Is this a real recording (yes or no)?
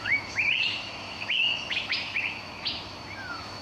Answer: no